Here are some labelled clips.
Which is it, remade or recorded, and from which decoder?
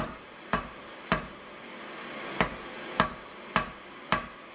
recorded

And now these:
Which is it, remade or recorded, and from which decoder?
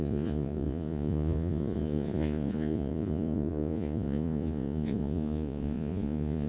remade, vocoder, Vocos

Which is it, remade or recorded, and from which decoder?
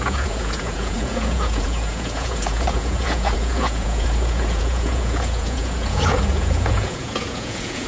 remade, vocoder, Vocos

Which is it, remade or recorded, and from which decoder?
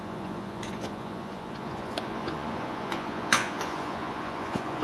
remade, vocoder, Vocos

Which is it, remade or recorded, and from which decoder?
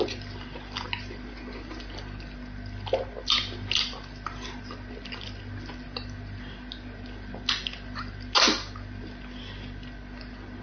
recorded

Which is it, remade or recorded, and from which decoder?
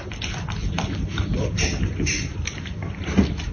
recorded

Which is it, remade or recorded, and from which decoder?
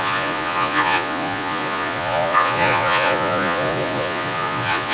remade, vocoder, Vocos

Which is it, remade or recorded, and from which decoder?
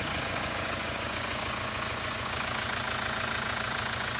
remade, vocoder, Vocos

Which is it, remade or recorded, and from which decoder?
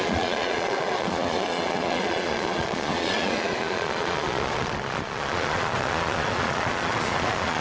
remade, vocoder, Vocos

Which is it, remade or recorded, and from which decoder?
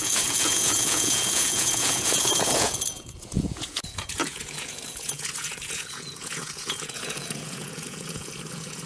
remade, vocoder, Vocos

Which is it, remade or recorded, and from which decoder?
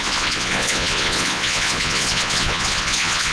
remade, vocoder, Vocos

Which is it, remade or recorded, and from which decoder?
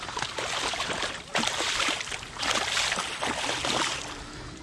recorded